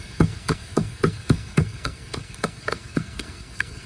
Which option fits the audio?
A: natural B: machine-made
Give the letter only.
B